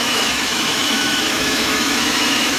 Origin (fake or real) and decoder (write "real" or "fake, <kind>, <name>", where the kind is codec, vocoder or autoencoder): fake, autoencoder, DAC-VAE